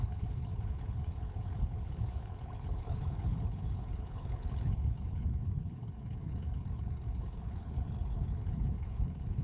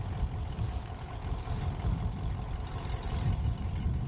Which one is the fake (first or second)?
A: first